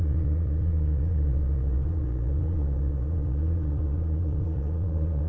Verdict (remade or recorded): remade